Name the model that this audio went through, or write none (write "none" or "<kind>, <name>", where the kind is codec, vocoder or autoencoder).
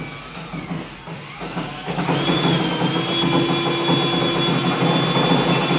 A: none